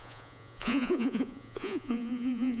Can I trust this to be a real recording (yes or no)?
no